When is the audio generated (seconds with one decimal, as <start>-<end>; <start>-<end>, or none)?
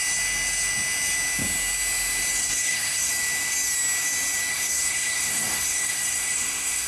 2.4-3.1; 4.5-6.9